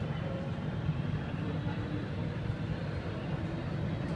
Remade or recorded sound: remade